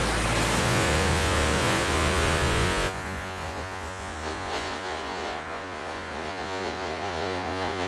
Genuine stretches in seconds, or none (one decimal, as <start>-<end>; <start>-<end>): 0.0-0.6